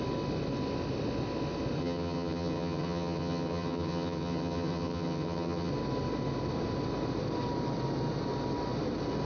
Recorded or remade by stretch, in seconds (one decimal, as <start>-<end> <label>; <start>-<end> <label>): 0.0-1.8 recorded; 1.8-5.7 remade; 5.7-9.2 recorded